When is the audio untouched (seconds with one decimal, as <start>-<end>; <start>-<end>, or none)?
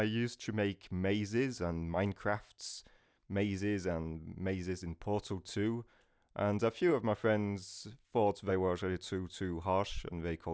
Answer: 0.0-10.5